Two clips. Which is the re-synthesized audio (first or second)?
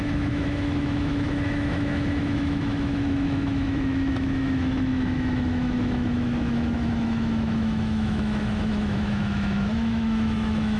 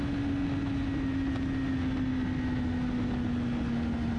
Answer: first